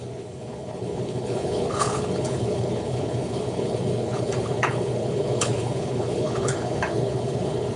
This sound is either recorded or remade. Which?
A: remade